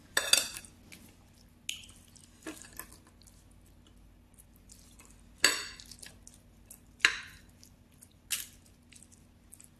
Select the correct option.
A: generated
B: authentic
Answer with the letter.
B